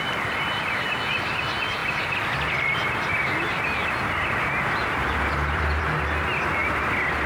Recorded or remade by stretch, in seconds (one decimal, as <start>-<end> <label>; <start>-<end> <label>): 0.0-7.3 remade